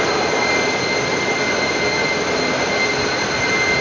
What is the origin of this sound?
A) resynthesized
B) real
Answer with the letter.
B